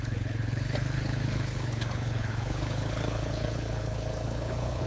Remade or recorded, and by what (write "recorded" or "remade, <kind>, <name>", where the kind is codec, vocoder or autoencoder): remade, codec, HILCodec